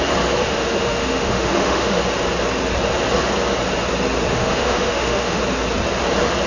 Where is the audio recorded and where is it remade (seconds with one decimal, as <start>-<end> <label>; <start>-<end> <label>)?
0.0-0.4 recorded; 0.4-2.0 remade; 2.0-4.3 recorded; 4.3-5.4 remade; 5.4-6.5 recorded